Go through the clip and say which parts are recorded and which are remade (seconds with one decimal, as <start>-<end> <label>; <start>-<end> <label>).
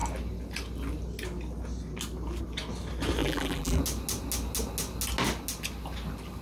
0.0-3.2 recorded; 3.2-3.8 remade; 3.8-6.4 recorded